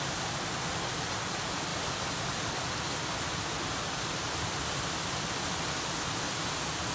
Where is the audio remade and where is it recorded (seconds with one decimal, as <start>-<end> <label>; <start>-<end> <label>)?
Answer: 0.0-1.7 recorded; 1.7-5.5 remade; 5.5-6.9 recorded